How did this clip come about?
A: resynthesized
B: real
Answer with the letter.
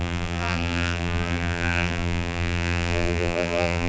A